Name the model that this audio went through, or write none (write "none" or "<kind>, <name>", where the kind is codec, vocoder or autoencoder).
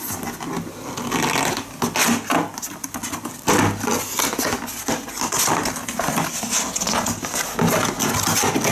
none